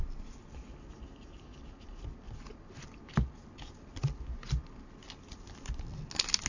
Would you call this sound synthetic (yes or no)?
no